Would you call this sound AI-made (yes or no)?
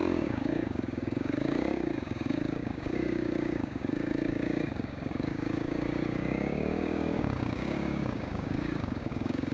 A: yes